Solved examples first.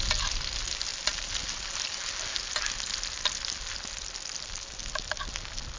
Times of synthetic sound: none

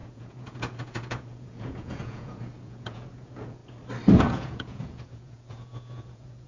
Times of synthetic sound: 0.0-3.6 (vocoder, Vocos); 4.2-6.5

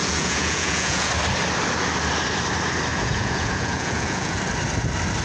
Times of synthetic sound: 0.0-1.1 (vocoder, Vocos); 2.9-4.4

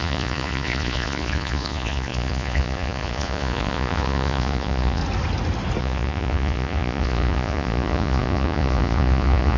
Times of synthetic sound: 0.0-5.0 (vocoder, Vocos); 5.8-9.6

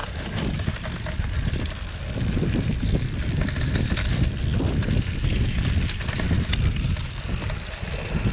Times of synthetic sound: none

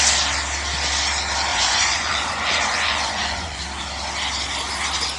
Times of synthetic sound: 1.5-3.6 (vocoder, Vocos)

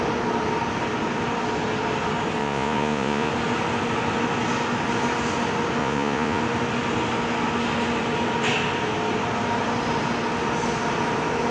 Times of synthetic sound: 2.4-3.3 (vocoder, Vocos); 5.8-6.4